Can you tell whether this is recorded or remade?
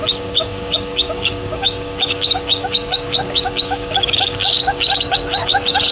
remade